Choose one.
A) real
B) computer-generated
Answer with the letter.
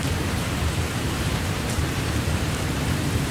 B